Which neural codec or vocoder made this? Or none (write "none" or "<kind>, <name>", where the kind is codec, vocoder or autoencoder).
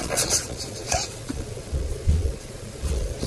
vocoder, Vocos